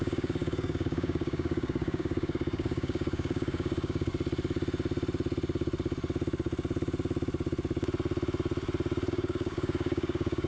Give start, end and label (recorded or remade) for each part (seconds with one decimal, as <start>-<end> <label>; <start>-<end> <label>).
0.0-4.1 remade; 4.1-9.1 recorded; 9.1-10.5 remade